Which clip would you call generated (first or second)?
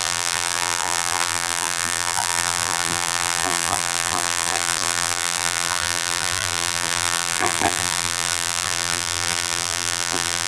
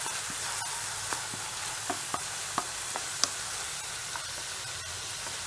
first